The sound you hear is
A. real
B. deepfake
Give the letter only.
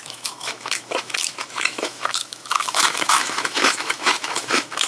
B